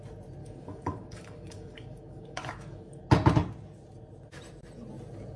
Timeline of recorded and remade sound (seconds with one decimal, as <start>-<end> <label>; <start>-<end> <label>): 0.0-0.4 recorded; 0.4-3.0 remade; 3.0-5.4 recorded